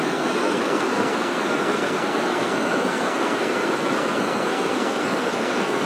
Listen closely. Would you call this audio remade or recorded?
remade